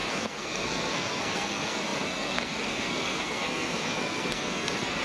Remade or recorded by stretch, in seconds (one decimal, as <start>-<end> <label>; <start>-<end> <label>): 0.0-5.0 remade